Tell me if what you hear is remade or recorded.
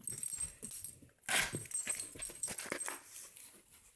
recorded